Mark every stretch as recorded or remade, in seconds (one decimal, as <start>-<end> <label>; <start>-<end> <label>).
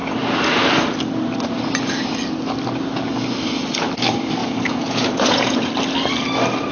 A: 0.0-4.4 recorded; 4.4-5.7 remade; 5.7-6.7 recorded